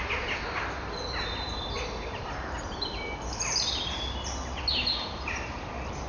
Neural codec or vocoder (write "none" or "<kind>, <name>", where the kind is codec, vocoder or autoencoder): none